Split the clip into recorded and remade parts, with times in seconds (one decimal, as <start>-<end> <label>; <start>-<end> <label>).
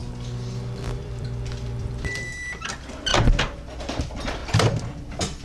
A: 0.0-1.0 recorded; 1.0-3.1 remade; 3.1-3.8 recorded; 3.8-4.4 remade; 4.4-5.4 recorded